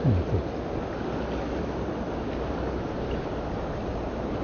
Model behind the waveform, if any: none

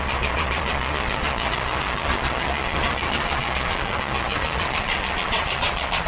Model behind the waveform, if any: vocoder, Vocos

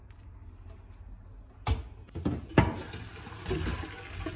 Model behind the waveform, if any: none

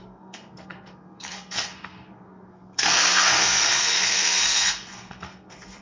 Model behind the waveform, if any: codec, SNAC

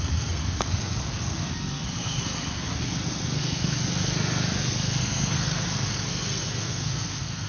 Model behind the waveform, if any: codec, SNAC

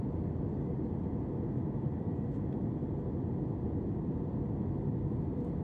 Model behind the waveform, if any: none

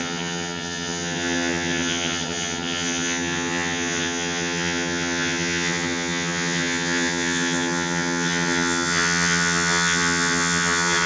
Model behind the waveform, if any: vocoder, HiFi-GAN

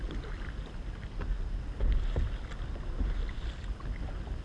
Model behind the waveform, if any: none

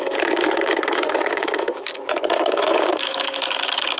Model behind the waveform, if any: codec, DAC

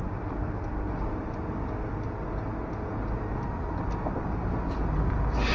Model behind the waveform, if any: none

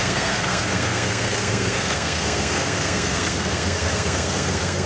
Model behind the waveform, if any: codec, SNAC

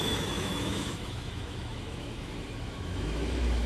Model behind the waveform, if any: autoencoder, DAC-VAE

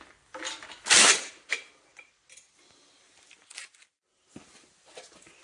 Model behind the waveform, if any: none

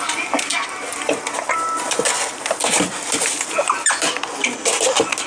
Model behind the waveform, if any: none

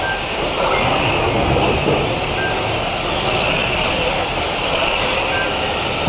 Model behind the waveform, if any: none